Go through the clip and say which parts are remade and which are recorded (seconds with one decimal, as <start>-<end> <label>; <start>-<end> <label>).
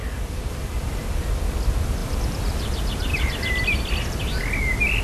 0.0-1.4 remade; 1.4-2.0 recorded; 2.0-2.5 remade; 2.5-3.1 recorded; 3.1-3.8 remade; 3.8-5.0 recorded